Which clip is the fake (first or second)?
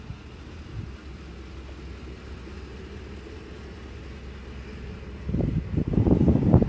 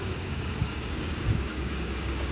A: second